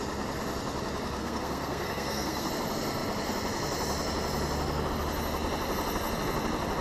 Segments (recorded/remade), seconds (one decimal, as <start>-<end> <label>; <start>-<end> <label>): 0.0-1.2 recorded; 1.2-2.5 remade; 2.5-6.8 recorded